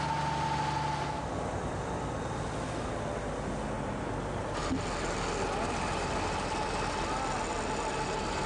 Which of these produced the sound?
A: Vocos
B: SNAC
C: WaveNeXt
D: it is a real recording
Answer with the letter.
D